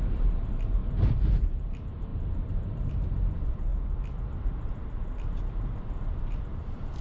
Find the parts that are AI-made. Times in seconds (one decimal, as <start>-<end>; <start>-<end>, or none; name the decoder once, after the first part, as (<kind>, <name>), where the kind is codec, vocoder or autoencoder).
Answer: 0.0-7.0 (vocoder, BigVGAN v2)